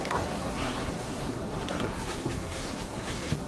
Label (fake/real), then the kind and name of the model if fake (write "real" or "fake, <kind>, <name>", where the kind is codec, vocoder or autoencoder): fake, codec, SNAC